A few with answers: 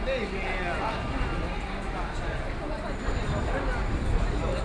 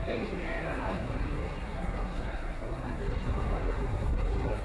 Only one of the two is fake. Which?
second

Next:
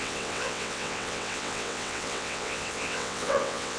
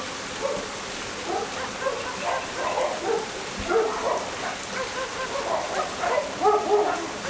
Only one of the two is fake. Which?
first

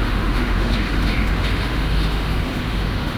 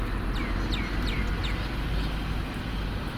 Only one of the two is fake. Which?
first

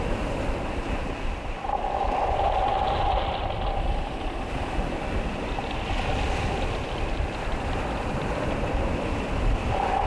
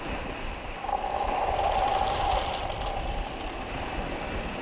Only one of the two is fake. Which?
first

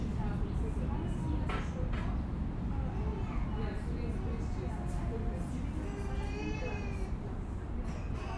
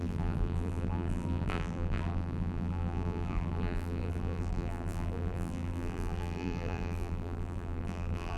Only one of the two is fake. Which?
second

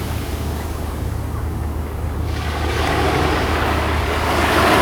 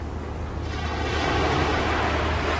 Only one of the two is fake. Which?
first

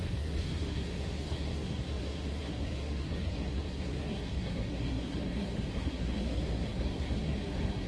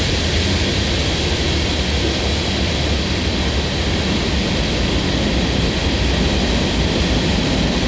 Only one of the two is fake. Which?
first